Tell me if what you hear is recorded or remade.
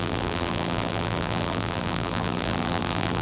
remade